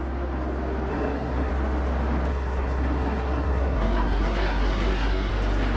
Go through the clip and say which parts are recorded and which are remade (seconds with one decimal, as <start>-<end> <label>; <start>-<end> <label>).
0.0-0.9 recorded; 0.9-1.5 remade; 1.5-2.3 recorded; 2.3-5.3 remade; 5.3-5.8 recorded